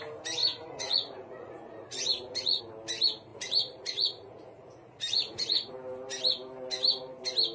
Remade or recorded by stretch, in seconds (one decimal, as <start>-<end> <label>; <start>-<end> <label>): 0.0-0.4 recorded; 0.4-2.6 remade; 2.6-3.3 recorded; 3.3-5.7 remade; 5.7-7.5 recorded